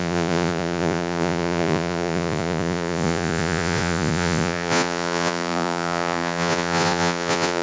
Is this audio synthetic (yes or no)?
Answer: yes